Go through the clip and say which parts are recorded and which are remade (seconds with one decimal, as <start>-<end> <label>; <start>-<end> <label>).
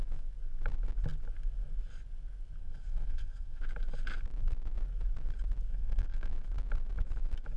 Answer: 0.0-2.6 recorded; 2.6-3.6 remade; 3.6-5.7 recorded; 5.7-6.3 remade; 6.3-7.6 recorded